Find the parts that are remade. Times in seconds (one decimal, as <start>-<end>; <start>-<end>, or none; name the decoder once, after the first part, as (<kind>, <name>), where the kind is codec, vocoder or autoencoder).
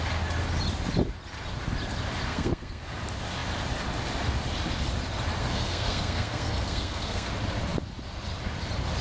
2.3-2.8 (codec, SNAC); 5.4-7.3